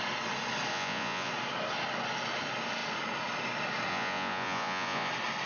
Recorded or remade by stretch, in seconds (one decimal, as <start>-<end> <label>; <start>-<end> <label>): 0.0-0.7 recorded; 0.7-1.3 remade; 1.3-3.9 recorded; 3.9-5.1 remade; 5.1-5.5 recorded